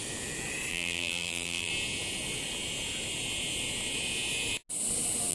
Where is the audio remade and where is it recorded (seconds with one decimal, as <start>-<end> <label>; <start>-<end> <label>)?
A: 0.0-0.7 recorded; 0.7-1.7 remade; 1.7-5.3 recorded